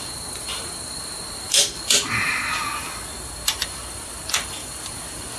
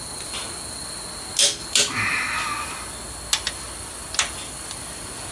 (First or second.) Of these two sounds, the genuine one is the second